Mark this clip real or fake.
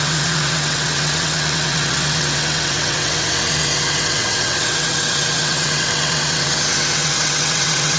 fake